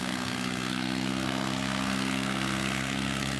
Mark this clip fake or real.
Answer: fake